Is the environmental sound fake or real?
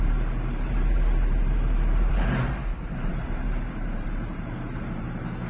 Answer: fake